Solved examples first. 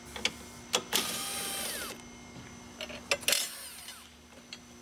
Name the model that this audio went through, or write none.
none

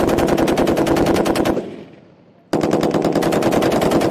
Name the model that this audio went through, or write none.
none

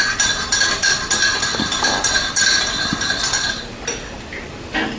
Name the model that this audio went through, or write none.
none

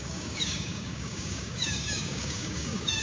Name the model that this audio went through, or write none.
codec, DAC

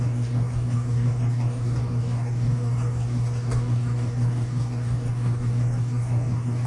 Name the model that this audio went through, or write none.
codec, DAC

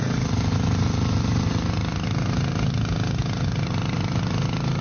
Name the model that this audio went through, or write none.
none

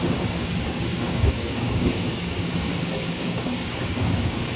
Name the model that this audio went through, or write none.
codec, DAC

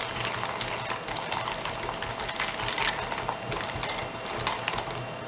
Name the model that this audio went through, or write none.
none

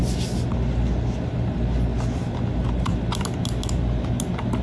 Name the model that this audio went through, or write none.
none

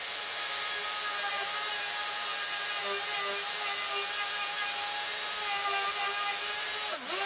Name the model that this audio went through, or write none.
none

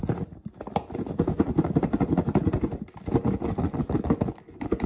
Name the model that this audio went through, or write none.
none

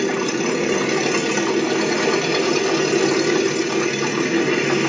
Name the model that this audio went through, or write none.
none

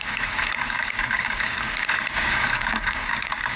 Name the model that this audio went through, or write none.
codec, DAC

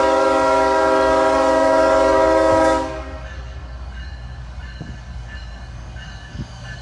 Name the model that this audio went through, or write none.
codec, DAC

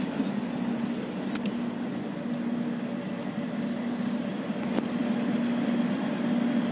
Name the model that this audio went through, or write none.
none